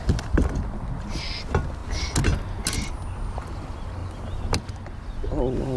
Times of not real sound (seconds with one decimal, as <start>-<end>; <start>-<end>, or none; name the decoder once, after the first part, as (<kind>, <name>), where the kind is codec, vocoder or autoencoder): none